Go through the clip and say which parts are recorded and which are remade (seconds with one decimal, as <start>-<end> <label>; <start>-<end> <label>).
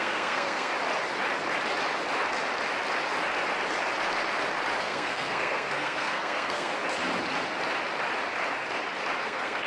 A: 0.0-0.7 remade; 0.7-4.8 recorded; 4.8-6.7 remade; 6.7-9.2 recorded; 9.2-9.7 remade